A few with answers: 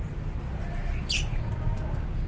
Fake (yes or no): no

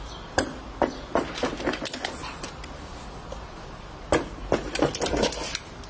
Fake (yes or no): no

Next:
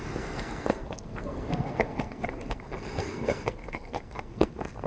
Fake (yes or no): yes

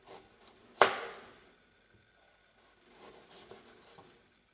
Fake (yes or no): no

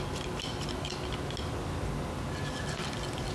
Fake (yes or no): no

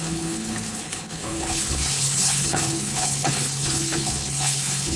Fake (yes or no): yes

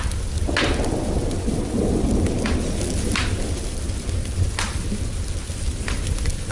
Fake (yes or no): no